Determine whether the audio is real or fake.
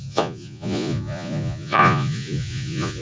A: fake